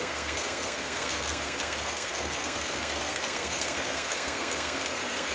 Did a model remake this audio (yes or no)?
yes